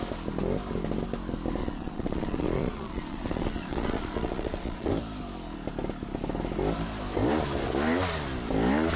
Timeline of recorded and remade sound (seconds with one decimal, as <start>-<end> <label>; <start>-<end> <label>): 0.0-1.6 recorded; 1.6-4.9 remade; 4.9-9.0 recorded